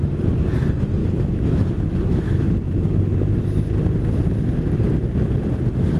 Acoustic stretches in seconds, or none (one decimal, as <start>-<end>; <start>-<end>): 0.0-1.0; 2.5-6.0